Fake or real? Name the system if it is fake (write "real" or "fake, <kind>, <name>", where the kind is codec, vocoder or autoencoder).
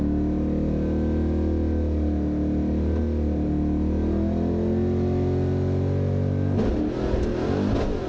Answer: real